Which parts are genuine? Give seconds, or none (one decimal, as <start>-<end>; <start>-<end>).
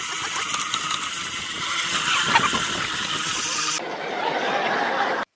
0.0-3.3